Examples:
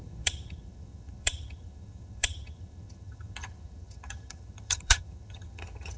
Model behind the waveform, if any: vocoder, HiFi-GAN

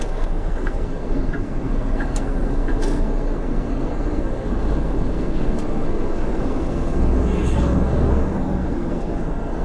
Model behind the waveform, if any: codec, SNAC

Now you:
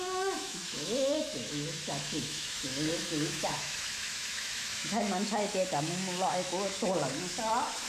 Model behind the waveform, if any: autoencoder, DAC-VAE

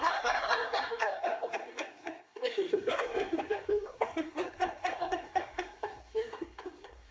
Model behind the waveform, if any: codec, SNAC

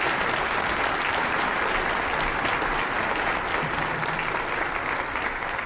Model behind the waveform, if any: none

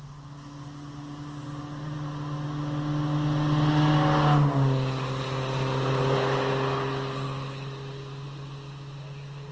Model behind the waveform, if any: none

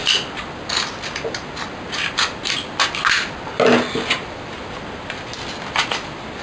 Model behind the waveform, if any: none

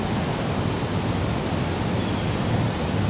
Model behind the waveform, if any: none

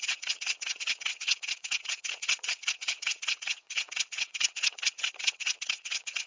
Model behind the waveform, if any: vocoder, WaveNeXt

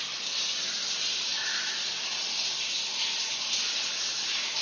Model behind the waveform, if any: none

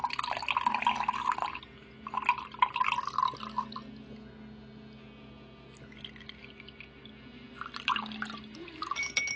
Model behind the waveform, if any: none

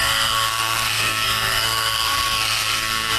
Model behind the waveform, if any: codec, SNAC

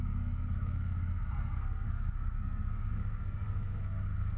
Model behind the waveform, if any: codec, SNAC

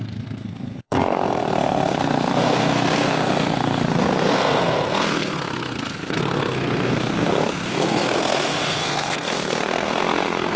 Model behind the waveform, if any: codec, SNAC